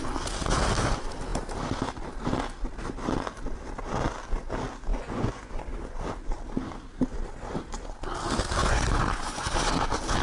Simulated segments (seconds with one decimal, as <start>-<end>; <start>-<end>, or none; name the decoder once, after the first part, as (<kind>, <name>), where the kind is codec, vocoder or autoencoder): 4.9-5.5 (vocoder, Vocos); 8.6-9.5